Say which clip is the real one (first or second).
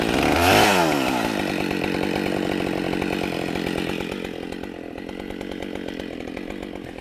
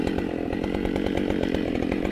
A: first